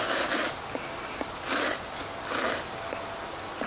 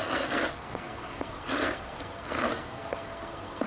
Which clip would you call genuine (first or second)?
first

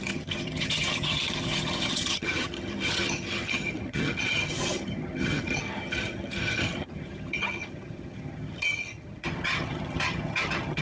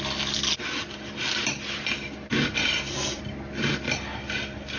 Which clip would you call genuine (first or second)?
second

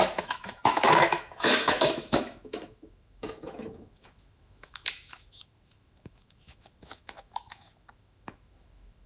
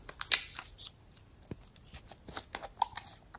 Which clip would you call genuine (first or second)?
second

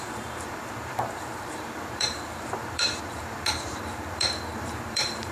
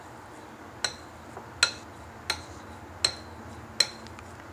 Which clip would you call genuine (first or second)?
second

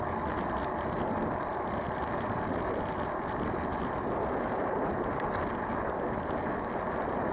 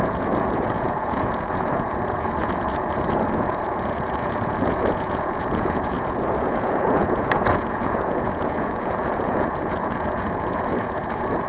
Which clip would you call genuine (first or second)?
first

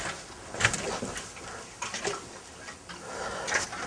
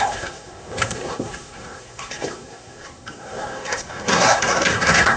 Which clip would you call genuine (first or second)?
first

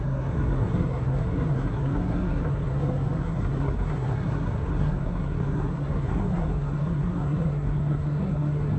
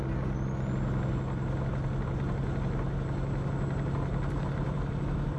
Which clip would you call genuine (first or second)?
second